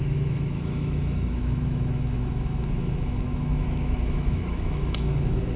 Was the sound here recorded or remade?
remade